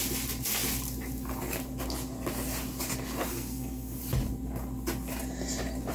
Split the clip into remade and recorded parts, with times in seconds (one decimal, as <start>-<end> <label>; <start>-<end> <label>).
0.0-3.3 recorded; 3.3-4.0 remade; 4.0-5.9 recorded